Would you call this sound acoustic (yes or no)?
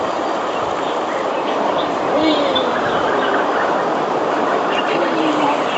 no